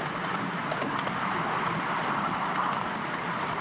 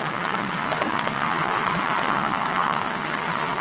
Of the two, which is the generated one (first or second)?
second